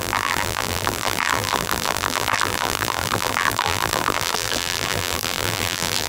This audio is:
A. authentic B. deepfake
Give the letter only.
B